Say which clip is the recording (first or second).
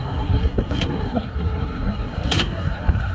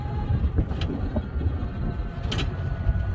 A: second